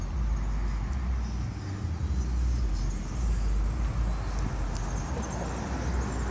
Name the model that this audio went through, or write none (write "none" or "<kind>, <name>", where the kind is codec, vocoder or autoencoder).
none